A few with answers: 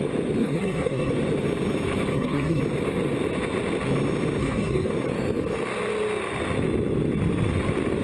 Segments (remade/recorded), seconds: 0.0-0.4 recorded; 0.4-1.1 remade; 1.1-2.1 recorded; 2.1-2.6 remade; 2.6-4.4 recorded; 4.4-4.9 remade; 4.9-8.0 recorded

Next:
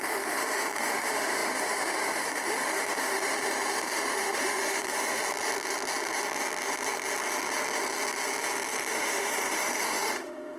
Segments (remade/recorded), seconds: 0.0-5.2 remade; 5.2-8.9 recorded; 8.9-10.6 remade

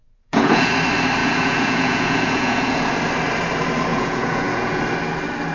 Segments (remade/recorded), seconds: 0.0-0.7 remade; 0.7-1.2 recorded; 1.2-2.9 remade; 2.9-3.9 recorded; 3.9-4.8 remade; 4.8-5.5 recorded

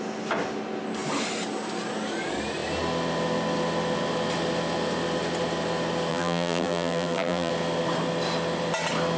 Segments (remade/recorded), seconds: 0.0-6.1 recorded; 6.1-7.5 remade; 7.5-9.2 recorded

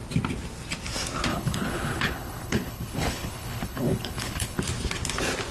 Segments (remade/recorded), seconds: 0.0-1.3 recorded; 1.3-4.6 remade; 4.6-5.5 recorded

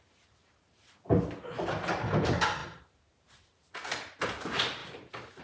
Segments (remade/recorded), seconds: 0.0-2.6 recorded; 2.6-4.2 remade; 4.2-4.8 recorded; 4.8-5.4 remade